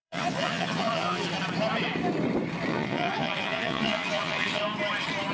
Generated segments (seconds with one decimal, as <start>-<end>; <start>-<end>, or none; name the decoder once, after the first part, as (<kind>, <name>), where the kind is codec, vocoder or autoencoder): 0.0-1.2 (vocoder, Vocos); 2.7-4.6